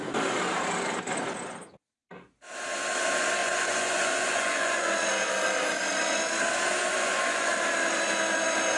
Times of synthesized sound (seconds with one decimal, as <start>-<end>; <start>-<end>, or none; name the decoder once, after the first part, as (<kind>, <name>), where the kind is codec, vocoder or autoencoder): 3.4-4.9 (vocoder, Vocos); 6.9-7.5